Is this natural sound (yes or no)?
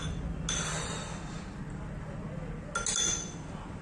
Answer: yes